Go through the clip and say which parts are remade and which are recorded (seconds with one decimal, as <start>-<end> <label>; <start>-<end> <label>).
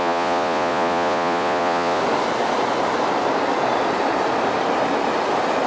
0.0-2.0 remade; 2.0-5.7 recorded